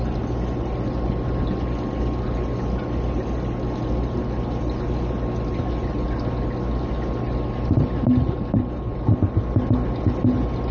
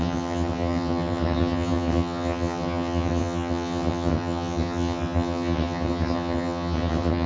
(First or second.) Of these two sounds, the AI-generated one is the second